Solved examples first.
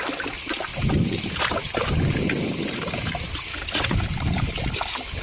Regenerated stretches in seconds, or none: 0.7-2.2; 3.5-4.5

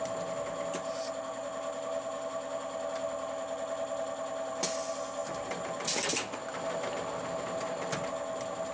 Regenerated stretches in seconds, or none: none

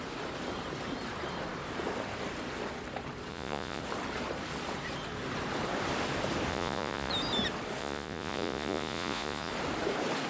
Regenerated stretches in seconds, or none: 3.3-3.8; 6.5-7.1; 7.8-9.5